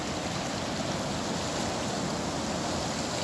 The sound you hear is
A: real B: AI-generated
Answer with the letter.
A